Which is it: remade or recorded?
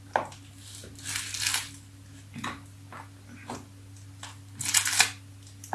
recorded